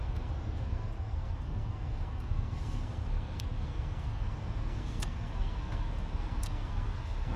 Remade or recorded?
remade